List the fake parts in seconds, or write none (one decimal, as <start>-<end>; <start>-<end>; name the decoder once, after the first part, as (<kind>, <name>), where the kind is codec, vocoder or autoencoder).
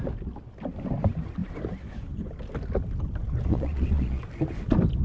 3.5-4.2 (vocoder, Vocos)